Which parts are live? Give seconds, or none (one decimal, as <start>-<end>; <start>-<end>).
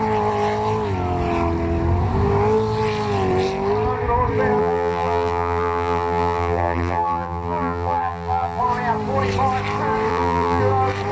0.0-4.6; 8.6-10.1; 10.6-11.1